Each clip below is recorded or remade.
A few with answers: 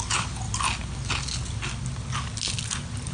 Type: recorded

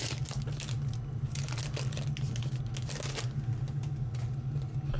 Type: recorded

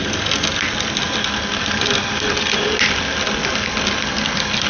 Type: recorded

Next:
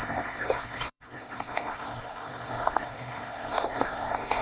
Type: remade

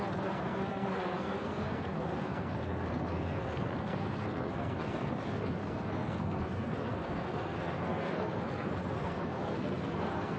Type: remade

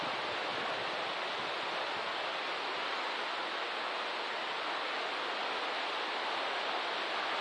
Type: recorded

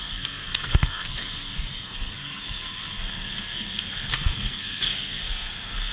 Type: remade